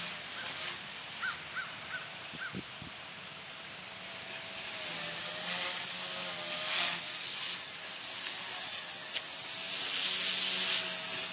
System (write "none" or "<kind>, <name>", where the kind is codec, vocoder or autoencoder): none